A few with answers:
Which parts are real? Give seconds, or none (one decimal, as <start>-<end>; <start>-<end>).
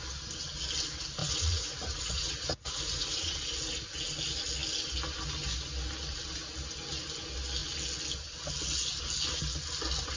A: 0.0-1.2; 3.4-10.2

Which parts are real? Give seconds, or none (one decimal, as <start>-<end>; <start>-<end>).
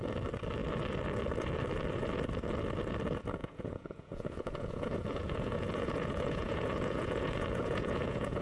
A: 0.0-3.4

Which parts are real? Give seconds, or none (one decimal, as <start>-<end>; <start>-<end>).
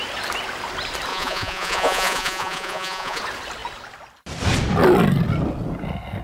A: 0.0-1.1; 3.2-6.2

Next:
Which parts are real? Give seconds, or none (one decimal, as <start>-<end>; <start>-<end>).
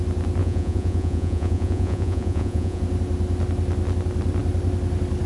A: 0.0-0.4; 2.8-5.3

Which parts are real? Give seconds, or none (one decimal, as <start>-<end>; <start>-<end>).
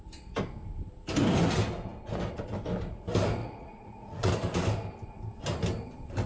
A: 0.0-3.4; 4.3-6.3